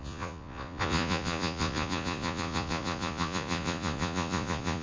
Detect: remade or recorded remade